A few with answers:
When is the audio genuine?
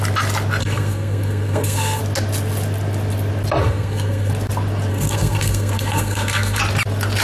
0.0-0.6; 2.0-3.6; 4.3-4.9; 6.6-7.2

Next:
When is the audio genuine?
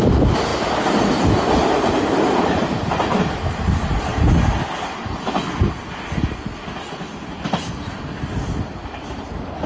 0.0-9.7